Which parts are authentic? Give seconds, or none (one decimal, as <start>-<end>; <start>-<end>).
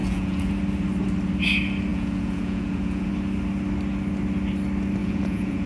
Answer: 0.5-1.9; 3.1-5.0